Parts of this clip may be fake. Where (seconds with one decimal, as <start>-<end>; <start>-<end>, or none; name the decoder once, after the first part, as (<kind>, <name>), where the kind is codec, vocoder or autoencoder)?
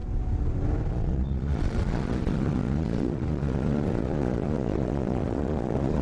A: 0.9-6.0 (vocoder, Vocos)